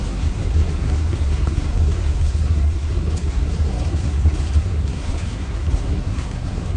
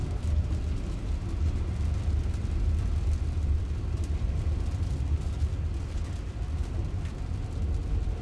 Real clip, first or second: second